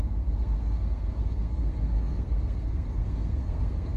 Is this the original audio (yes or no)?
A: no